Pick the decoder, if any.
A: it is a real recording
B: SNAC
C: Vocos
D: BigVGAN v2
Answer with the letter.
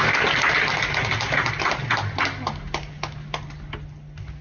A